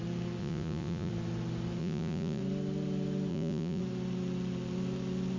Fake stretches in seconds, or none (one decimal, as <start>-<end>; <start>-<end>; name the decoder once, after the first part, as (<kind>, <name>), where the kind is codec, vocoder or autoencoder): 0.4-1.1 (vocoder, Vocos); 1.8-2.4; 3.3-3.8